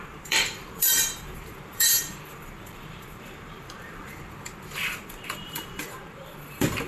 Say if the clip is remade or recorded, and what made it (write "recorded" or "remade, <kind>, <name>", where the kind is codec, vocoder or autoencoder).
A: remade, vocoder, BigVGAN v2